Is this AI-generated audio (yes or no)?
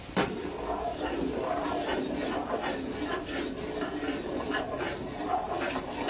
no